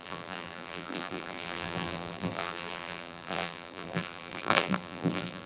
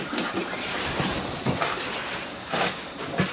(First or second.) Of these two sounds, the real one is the second